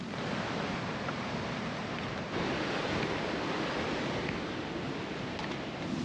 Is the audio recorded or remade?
recorded